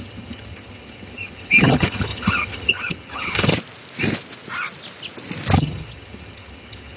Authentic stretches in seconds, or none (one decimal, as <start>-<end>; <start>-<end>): 3.5-5.6